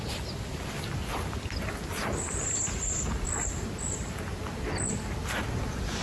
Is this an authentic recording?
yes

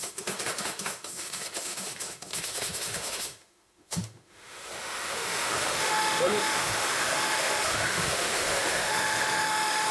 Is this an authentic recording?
no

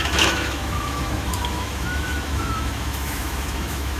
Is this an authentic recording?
no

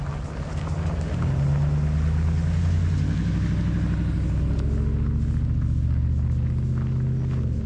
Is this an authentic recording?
yes